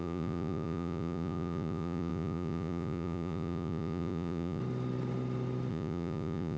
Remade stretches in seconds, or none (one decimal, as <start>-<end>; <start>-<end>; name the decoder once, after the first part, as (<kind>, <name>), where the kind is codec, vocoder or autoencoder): 0.0-4.6 (vocoder, Vocos); 5.7-6.6